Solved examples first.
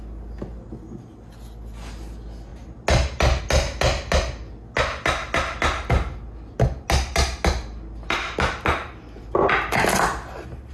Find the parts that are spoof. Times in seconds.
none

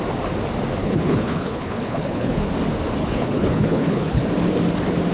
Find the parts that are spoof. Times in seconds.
0.8-2.5; 3.0-4.2

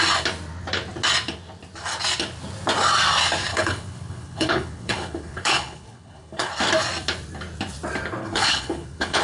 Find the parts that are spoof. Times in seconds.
3.5-6.5; 8.2-9.2

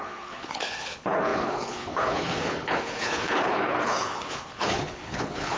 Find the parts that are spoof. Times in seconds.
0.0-5.6

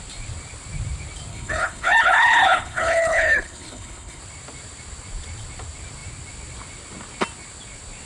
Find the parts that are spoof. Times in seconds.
1.3-4.2

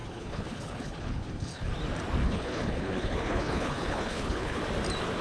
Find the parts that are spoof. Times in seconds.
0.0-1.7; 2.2-4.6